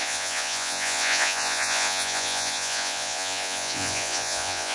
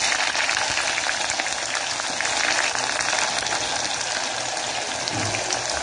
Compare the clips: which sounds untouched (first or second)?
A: second